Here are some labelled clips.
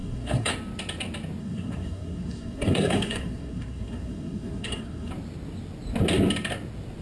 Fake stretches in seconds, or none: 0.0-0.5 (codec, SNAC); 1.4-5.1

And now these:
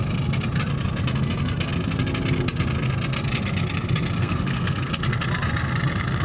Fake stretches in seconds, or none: 4.2-4.9 (codec, SNAC)

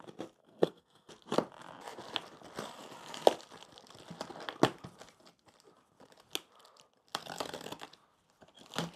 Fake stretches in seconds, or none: 0.4-1.1 (codec, SNAC)

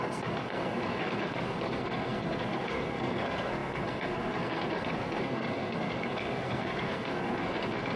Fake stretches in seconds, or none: 0.0-8.0 (codec, SNAC)

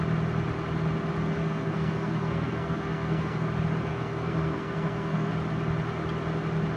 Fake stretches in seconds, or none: 1.4-3.5 (codec, SNAC); 3.9-5.3